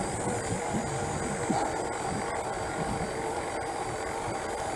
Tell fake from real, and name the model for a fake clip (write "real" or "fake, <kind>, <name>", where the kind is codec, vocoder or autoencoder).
real